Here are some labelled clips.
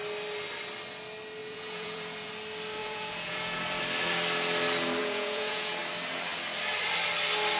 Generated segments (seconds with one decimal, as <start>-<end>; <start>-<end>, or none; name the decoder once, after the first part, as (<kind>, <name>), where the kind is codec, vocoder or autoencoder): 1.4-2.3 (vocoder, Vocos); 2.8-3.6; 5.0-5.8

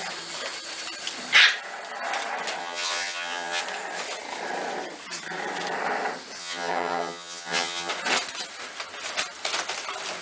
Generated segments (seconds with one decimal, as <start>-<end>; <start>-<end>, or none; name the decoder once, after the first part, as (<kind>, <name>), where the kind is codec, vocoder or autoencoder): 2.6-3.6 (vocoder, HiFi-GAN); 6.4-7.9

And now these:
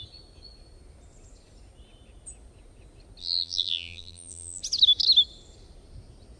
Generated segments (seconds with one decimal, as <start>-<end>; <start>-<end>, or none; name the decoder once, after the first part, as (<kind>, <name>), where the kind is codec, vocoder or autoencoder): 3.2-4.6 (vocoder, BigVGAN v2)